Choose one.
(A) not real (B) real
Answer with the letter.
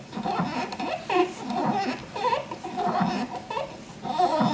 B